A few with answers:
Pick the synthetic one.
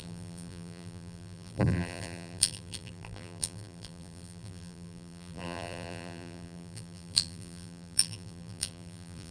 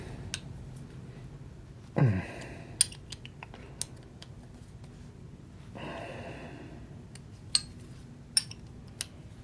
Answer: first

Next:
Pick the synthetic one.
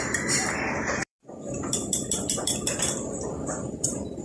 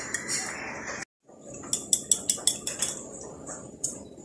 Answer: first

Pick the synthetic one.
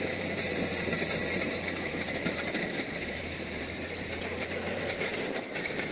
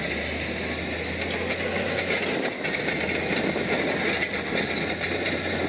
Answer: first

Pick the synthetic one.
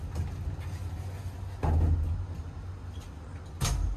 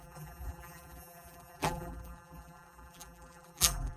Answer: second